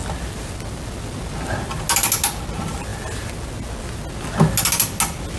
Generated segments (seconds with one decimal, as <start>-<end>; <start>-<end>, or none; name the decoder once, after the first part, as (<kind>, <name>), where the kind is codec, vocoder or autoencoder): none